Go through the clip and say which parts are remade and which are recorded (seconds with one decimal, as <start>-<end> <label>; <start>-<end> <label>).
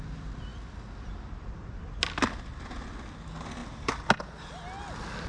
0.0-5.3 recorded